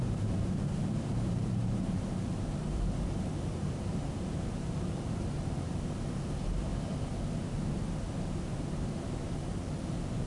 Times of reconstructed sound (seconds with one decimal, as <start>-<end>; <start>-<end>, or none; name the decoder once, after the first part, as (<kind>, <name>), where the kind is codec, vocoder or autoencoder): 0.0-6.7 (vocoder, BigVGAN v2); 8.9-10.3